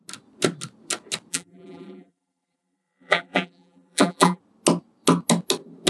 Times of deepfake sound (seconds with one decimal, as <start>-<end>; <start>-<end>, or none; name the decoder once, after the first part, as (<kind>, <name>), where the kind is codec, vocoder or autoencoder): 1.3-4.4 (vocoder, BigVGAN v2)